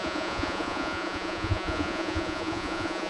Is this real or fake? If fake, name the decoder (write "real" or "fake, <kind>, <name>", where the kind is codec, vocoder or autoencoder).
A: fake, vocoder, Vocos